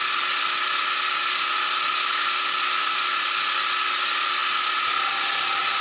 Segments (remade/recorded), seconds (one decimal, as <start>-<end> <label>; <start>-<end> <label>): 0.0-5.8 recorded

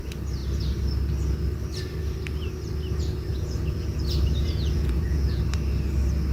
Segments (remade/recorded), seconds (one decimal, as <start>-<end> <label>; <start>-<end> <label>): 0.0-3.3 recorded; 3.3-4.0 remade; 4.0-4.4 recorded; 4.4-5.4 remade; 5.4-6.3 recorded